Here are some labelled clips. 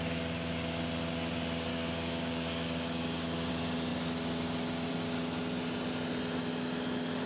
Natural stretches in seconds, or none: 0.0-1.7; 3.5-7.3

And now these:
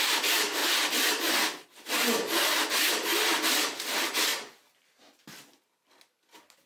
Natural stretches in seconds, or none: 0.0-6.7

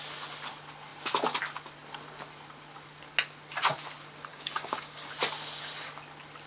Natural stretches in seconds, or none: 0.0-4.3; 5.1-6.5

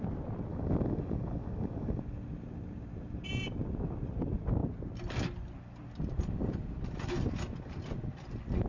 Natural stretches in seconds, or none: 0.0-0.5; 2.0-8.7

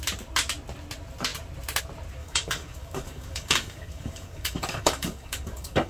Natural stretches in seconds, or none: 0.0-2.2

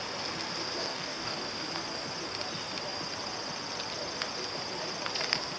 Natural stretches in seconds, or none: 0.0-0.8; 1.4-5.6